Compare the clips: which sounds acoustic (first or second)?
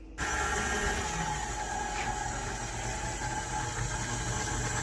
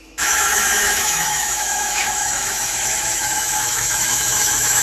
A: first